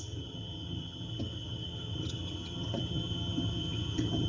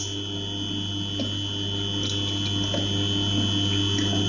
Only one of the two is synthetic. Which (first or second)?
first